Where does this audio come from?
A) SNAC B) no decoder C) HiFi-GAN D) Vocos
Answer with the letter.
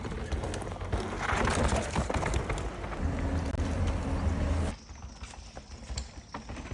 B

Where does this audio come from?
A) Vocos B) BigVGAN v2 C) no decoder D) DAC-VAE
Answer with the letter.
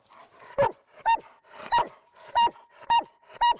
C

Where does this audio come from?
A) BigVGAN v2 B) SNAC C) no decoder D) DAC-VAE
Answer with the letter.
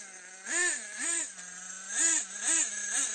C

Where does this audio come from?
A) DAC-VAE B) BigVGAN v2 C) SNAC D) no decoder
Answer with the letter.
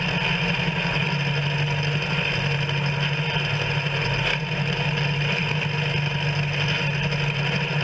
D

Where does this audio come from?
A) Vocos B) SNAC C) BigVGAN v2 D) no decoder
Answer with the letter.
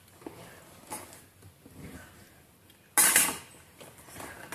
D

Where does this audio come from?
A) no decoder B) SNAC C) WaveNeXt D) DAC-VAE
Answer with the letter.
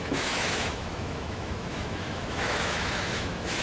D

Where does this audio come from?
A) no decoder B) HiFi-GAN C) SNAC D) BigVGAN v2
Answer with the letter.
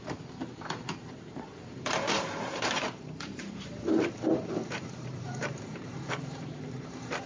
D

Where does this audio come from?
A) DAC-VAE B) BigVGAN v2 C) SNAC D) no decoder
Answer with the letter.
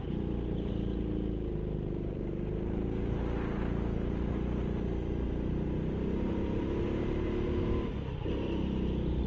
D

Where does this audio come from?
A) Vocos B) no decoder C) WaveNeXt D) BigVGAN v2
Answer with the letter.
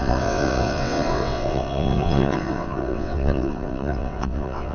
C